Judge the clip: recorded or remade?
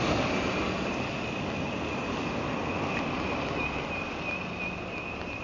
recorded